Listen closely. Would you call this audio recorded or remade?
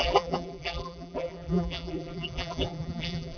remade